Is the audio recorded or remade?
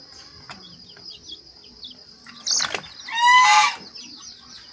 recorded